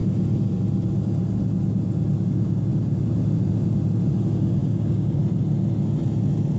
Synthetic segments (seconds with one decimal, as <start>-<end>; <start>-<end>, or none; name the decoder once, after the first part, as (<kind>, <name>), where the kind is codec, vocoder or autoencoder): 4.6-5.2 (codec, DAC)